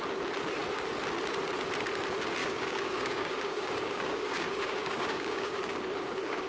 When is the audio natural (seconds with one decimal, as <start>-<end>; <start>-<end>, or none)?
0.0-2.4